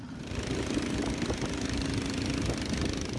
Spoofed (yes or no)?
yes